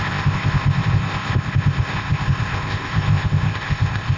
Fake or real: fake